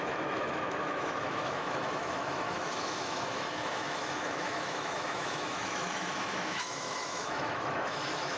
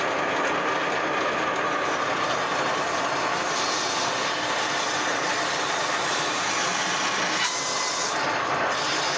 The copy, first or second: first